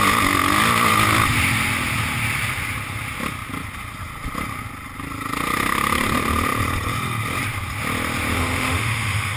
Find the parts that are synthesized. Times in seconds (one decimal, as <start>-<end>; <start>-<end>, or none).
8.3-9.4